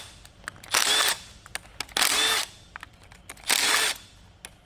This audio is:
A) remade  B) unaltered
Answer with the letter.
B